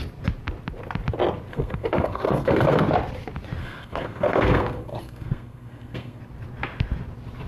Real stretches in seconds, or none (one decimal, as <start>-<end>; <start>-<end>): 0.0-1.5; 2.8-3.6; 6.2-7.5